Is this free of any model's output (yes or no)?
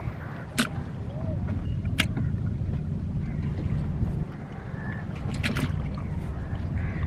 yes